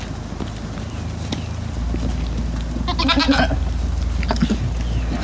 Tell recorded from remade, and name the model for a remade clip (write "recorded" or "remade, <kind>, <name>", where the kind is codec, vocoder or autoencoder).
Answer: recorded